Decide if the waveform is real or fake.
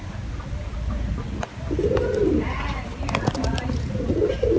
real